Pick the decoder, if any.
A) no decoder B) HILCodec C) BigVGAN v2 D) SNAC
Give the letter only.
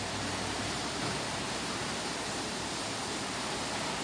C